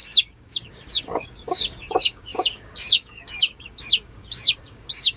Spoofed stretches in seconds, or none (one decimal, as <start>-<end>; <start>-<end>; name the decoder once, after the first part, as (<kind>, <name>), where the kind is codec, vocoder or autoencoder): 0.0-5.2 (codec, DAC)

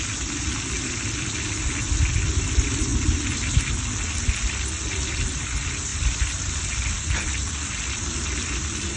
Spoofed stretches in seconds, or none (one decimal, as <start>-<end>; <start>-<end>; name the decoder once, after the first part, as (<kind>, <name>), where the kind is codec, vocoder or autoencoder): none

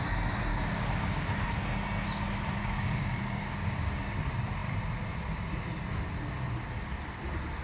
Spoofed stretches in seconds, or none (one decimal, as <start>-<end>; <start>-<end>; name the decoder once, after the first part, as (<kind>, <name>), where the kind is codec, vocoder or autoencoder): 0.5-1.5 (codec, DAC); 2.6-4.0

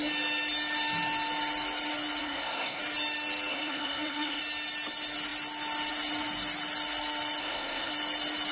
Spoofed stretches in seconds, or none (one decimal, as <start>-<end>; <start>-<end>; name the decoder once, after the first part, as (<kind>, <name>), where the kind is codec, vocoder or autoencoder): 2.2-2.8 (codec, SNAC); 3.5-4.4; 7.4-7.9

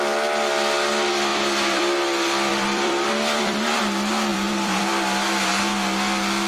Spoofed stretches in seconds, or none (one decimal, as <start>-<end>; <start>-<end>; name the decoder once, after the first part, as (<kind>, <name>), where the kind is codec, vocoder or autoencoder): 1.3-1.8 (vocoder, BigVGAN v2); 2.5-3.8; 4.3-4.8

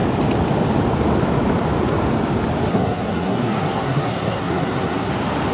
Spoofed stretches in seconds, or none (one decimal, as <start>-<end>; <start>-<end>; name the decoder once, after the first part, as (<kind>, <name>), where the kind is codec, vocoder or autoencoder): 2.7-5.1 (codec, SNAC)

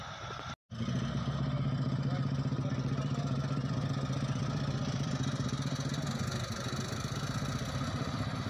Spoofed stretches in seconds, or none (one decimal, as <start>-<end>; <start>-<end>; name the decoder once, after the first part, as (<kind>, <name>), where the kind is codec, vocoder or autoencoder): 1.9-8.5 (vocoder, BigVGAN v2)

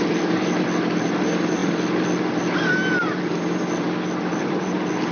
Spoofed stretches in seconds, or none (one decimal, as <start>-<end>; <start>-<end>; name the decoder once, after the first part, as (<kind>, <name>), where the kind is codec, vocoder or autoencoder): none